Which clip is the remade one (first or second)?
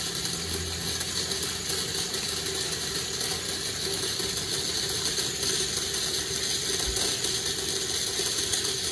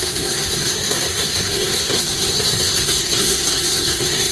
second